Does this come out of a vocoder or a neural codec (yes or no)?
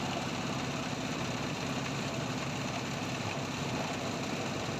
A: yes